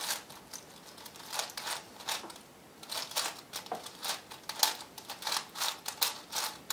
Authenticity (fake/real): real